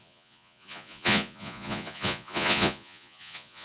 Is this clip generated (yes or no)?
yes